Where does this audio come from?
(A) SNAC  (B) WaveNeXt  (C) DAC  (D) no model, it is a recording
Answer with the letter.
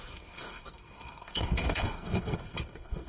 A